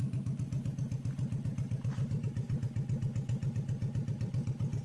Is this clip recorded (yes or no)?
yes